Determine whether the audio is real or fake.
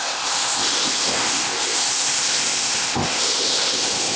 fake